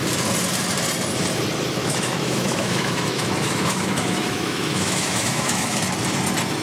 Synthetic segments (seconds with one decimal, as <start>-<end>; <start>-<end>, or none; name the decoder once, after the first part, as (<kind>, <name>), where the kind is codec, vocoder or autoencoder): 1.8-5.8 (autoencoder, DAC-VAE)